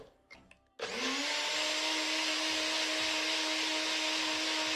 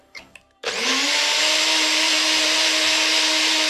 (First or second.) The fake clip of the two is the second